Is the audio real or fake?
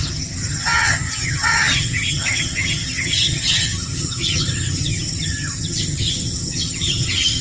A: fake